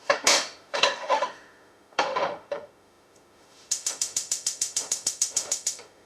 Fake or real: fake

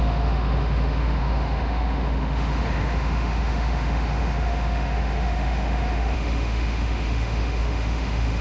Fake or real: fake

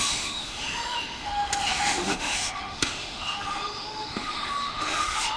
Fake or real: fake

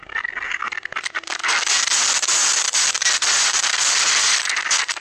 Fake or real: real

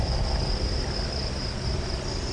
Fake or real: real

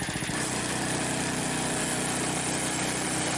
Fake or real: real